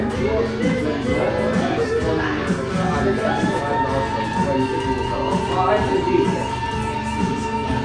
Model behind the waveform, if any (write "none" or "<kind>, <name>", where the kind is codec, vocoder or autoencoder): none